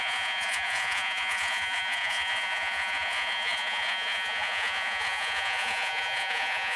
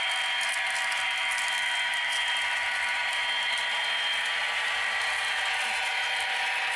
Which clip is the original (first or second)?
second